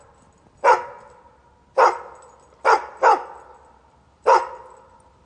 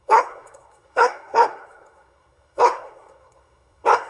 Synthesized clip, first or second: second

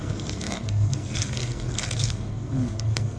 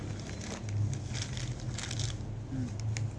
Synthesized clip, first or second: first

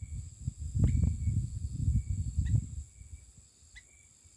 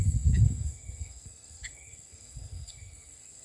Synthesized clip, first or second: second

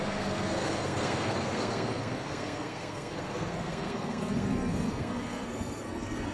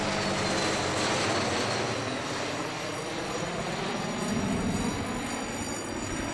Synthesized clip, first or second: first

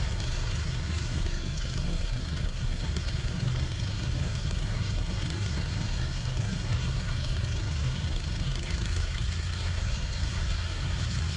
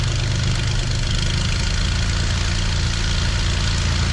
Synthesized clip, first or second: first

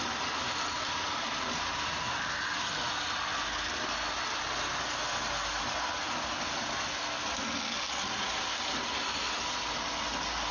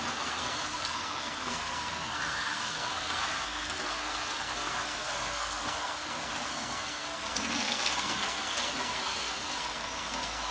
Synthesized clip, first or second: second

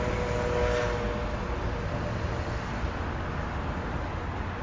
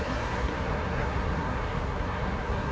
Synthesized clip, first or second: second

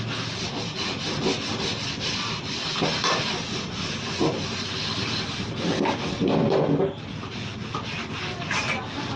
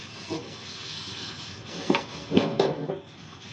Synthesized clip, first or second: second